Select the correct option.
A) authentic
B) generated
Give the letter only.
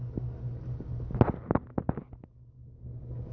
A